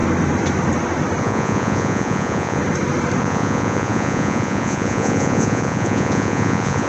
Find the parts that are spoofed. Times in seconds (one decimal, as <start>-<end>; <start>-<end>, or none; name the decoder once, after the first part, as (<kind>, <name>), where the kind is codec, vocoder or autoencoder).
1.2-2.6 (vocoder, Vocos); 3.2-6.9